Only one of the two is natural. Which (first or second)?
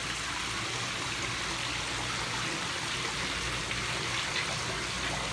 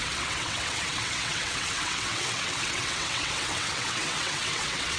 first